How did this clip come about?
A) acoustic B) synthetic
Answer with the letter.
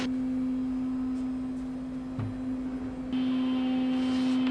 A